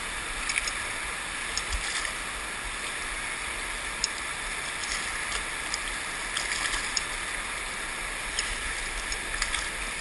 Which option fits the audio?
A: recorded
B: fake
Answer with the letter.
A